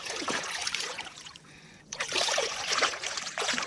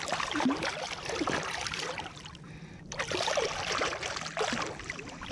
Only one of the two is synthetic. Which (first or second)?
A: first